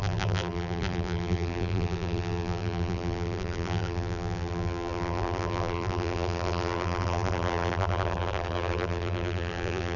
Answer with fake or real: fake